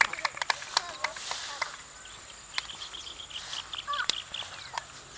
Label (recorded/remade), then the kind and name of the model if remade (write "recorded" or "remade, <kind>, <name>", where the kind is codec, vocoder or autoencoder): recorded